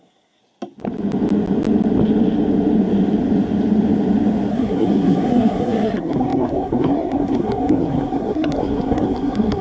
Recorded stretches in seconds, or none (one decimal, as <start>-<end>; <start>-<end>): 0.4-4.5